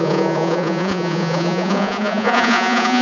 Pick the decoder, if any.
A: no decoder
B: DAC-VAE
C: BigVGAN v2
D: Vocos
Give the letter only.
D